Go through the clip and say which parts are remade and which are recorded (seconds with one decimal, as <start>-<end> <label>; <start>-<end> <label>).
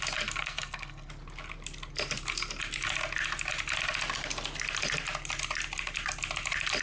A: 0.0-0.4 recorded; 0.4-1.1 remade; 1.1-6.8 recorded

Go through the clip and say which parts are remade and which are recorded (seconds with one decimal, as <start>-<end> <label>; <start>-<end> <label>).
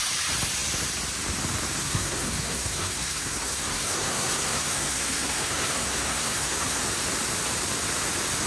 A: 0.0-1.8 recorded; 1.8-6.8 remade; 6.8-8.5 recorded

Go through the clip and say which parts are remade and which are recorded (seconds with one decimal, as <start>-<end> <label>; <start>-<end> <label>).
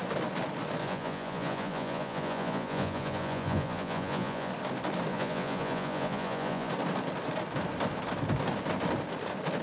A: 0.0-0.8 recorded; 0.8-4.5 remade; 4.5-5.1 recorded; 5.1-6.7 remade; 6.7-9.6 recorded